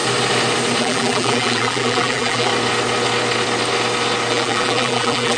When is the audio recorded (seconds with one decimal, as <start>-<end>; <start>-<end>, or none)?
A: 0.0-0.8; 2.5-4.3